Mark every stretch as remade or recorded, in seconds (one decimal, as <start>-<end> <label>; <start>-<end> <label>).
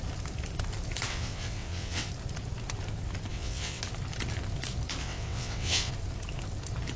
0.0-1.1 recorded; 1.1-2.1 remade; 2.1-3.3 recorded; 3.3-3.8 remade; 3.8-5.0 recorded; 5.0-5.9 remade; 5.9-7.0 recorded